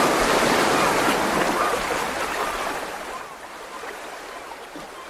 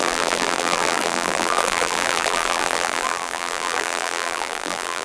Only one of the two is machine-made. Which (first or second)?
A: second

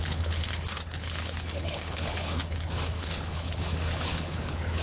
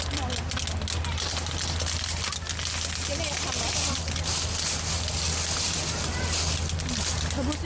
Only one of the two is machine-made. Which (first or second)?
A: first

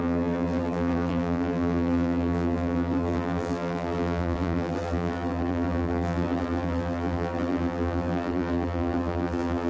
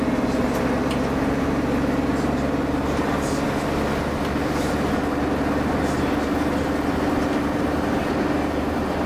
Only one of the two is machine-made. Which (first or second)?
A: first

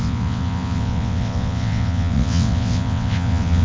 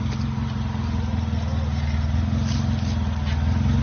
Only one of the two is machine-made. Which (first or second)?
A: first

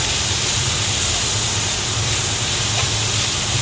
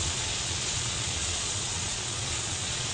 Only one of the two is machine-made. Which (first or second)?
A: second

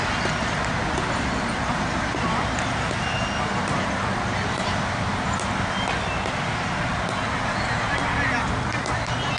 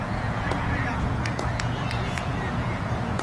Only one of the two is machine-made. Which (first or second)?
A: second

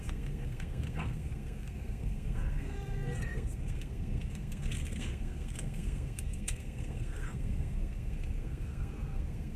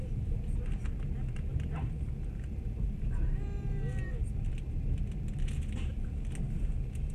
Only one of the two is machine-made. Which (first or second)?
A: first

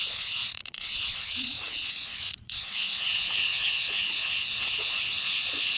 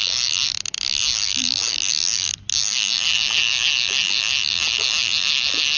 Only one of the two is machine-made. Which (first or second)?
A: first